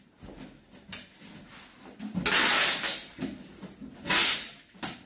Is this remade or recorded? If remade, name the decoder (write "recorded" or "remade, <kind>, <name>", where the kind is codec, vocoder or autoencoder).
recorded